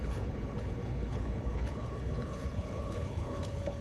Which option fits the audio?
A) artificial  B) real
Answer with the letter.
A